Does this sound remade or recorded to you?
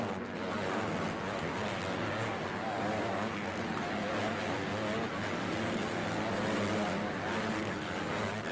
recorded